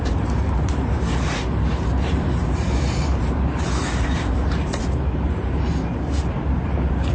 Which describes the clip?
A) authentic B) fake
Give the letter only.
B